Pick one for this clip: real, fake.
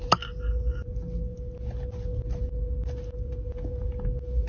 real